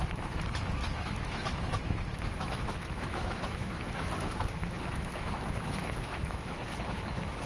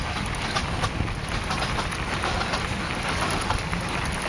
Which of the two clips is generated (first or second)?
first